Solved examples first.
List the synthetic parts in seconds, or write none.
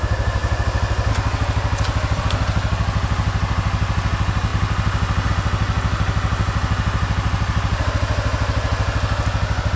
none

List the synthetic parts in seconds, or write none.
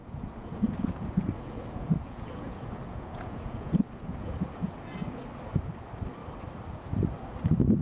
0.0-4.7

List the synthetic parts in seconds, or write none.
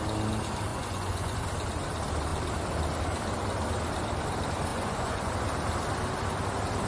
0.7-1.4; 4.7-5.3